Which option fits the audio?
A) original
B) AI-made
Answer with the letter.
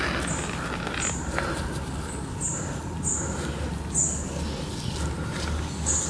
A